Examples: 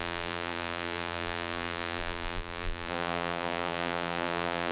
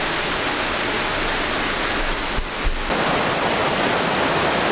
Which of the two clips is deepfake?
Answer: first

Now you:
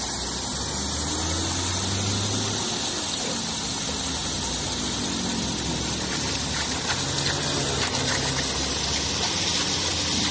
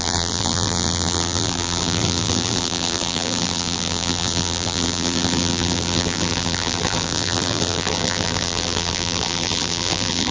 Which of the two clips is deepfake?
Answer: second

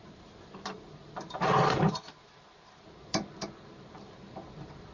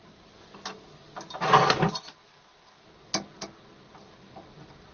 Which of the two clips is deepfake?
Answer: first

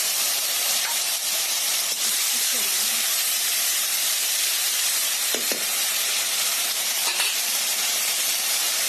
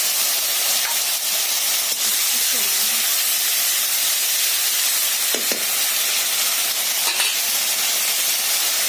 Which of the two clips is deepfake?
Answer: first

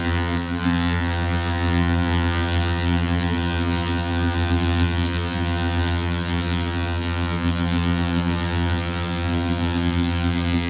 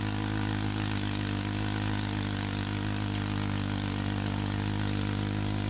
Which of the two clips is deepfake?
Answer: first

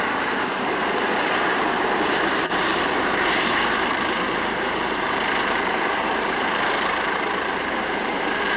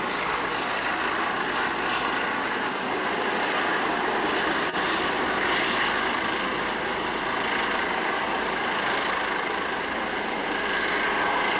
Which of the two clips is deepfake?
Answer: first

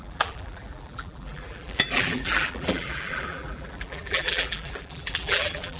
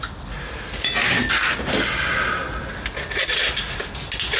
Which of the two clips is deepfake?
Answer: first